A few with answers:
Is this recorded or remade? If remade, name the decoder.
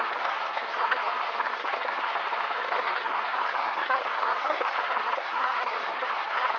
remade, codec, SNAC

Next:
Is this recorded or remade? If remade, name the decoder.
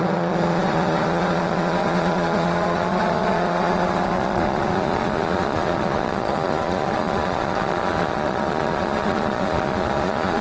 remade, vocoder, Vocos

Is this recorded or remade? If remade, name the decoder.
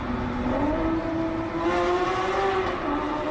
recorded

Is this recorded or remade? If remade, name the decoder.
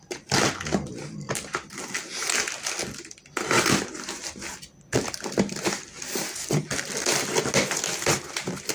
recorded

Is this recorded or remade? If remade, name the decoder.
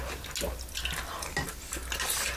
recorded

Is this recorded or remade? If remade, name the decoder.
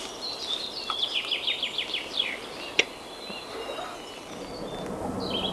recorded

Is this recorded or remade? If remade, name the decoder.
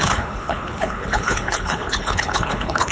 remade, codec, HILCodec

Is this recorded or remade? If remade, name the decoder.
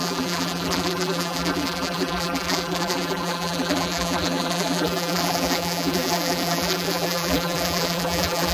remade, vocoder, BigVGAN v2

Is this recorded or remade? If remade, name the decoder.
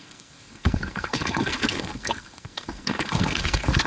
remade, codec, SNAC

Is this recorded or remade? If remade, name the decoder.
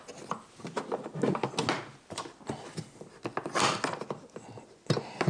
recorded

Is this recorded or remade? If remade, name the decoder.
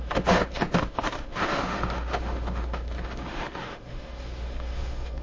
remade, autoencoder, DAC-VAE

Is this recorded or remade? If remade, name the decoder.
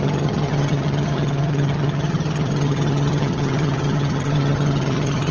remade, vocoder, HiFi-GAN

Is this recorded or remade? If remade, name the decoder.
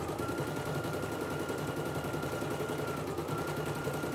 recorded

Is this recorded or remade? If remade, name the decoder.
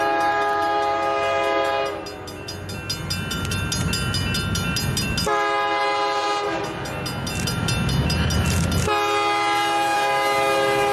recorded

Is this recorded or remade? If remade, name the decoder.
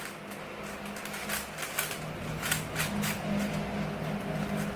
recorded